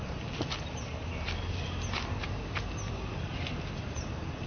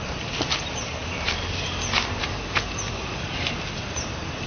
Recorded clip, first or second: first